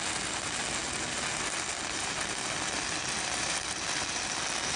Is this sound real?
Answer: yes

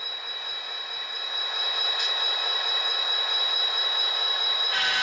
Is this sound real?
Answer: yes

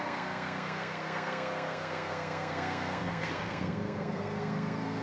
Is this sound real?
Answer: no